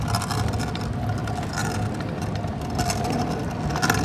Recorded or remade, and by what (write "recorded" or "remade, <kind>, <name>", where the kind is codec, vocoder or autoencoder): recorded